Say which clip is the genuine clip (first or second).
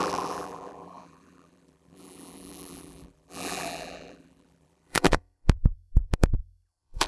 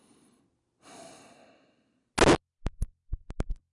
second